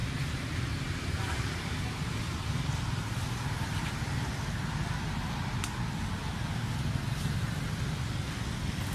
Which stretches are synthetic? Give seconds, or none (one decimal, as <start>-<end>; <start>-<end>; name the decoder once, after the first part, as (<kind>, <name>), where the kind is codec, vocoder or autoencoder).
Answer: 0.0-2.2 (vocoder, BigVGAN v2)